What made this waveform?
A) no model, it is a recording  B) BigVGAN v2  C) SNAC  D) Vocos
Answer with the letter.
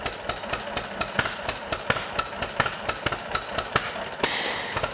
A